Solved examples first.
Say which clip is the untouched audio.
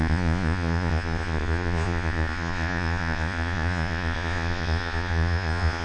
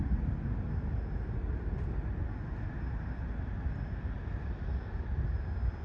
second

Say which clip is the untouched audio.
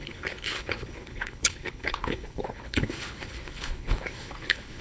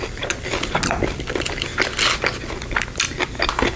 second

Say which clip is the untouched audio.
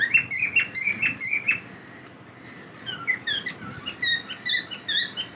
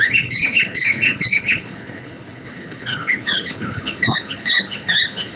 first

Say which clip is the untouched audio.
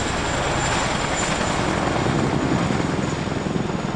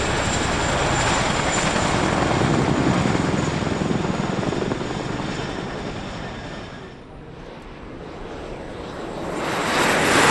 first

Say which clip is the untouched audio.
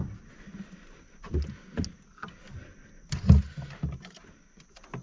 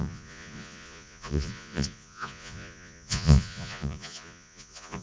first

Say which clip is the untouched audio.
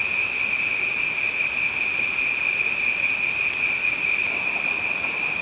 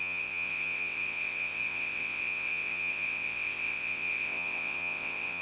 first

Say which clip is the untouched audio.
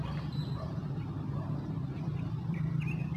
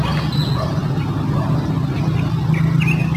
second